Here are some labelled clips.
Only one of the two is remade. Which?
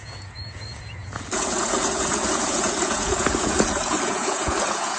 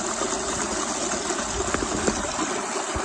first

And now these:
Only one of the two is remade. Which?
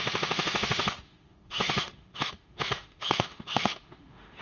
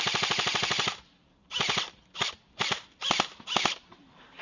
first